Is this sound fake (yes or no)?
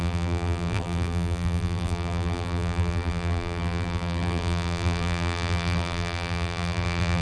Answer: yes